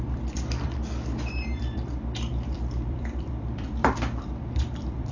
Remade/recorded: remade